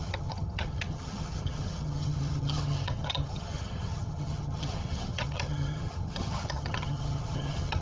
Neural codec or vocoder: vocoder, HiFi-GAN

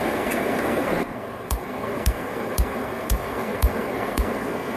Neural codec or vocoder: codec, SNAC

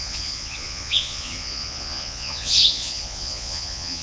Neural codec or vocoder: vocoder, Vocos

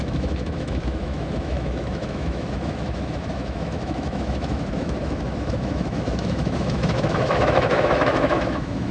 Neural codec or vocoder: autoencoder, DAC-VAE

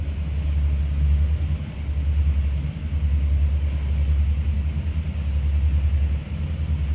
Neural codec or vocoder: none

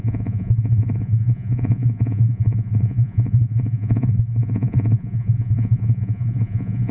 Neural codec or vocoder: vocoder, Vocos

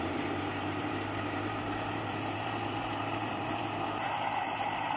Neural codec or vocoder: vocoder, BigVGAN v2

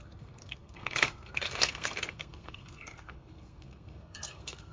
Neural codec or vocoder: codec, SNAC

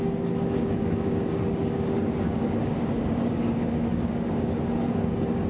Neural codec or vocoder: codec, DAC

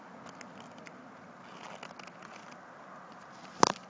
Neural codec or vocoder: none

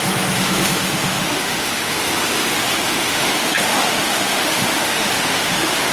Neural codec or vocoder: autoencoder, DAC-VAE